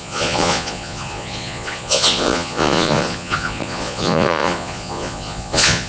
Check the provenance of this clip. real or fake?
fake